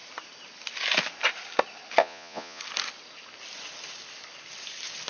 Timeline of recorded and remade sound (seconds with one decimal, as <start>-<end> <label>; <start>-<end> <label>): 0.0-2.0 recorded; 2.0-2.6 remade; 2.6-5.1 recorded